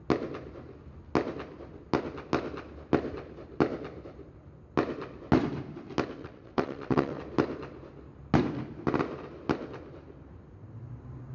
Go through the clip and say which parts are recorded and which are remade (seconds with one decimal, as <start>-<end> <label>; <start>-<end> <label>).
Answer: 0.0-6.2 recorded; 6.2-7.2 remade; 7.2-11.3 recorded